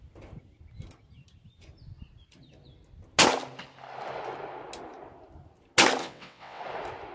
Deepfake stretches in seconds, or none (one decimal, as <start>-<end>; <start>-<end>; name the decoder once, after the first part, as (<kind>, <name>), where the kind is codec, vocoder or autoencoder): 6.0-6.6 (vocoder, WaveNeXt)